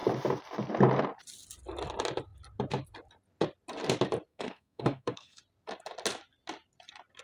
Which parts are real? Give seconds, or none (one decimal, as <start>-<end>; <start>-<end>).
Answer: 0.0-4.3; 5.4-7.2